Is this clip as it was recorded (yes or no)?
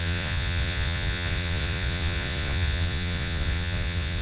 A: no